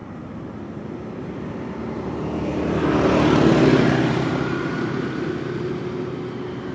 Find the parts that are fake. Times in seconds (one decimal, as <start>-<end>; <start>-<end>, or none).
2.5-5.3